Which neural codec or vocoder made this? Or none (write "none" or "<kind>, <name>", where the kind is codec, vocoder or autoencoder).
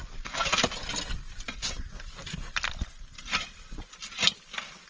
none